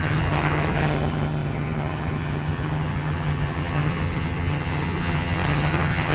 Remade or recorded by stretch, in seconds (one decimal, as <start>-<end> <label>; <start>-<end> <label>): 0.0-6.1 remade